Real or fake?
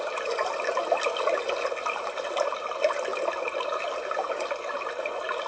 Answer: real